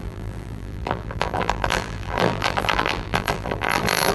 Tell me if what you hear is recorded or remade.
remade